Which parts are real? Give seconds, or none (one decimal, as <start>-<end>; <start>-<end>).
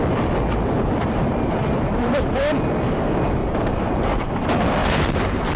0.0-1.0; 2.3-3.4; 4.3-4.8